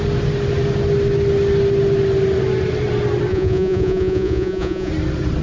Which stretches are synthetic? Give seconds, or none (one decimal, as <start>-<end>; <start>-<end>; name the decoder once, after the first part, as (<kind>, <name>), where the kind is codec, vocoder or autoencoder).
3.3-4.9 (vocoder, Vocos)